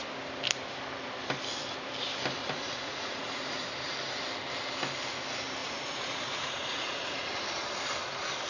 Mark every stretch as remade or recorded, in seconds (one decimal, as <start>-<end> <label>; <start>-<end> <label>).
0.0-2.4 recorded; 2.4-3.7 remade; 3.7-5.6 recorded; 5.6-7.3 remade; 7.3-8.5 recorded